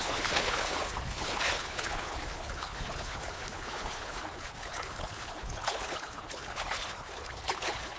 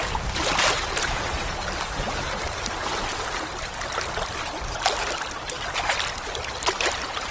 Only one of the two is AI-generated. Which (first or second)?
first